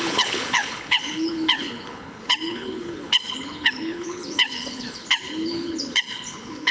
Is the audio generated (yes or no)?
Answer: yes